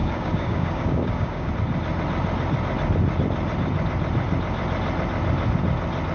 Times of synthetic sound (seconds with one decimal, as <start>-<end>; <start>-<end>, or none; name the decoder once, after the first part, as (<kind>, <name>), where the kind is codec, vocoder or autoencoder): 0.0-1.5 (codec, DAC)